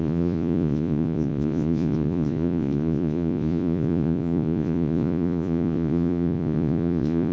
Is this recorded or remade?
remade